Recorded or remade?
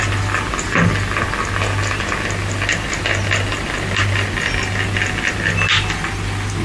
recorded